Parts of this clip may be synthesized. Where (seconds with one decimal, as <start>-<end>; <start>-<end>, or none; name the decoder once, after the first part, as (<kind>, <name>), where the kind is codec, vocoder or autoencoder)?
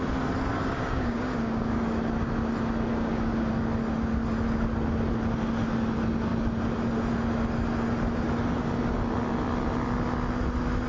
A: 0.5-1.8 (codec, DAC); 2.9-3.5